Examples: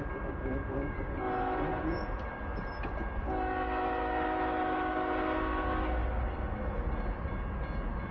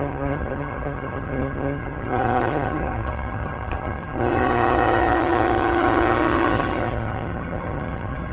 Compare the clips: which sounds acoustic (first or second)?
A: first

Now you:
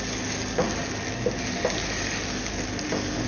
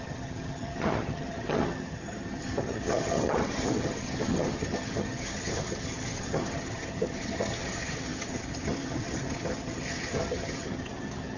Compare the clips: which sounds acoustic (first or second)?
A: first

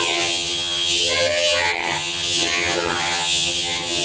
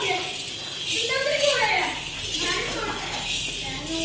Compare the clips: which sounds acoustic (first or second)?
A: second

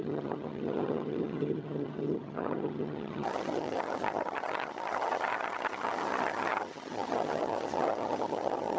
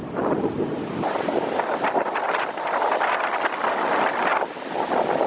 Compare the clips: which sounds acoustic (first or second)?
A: second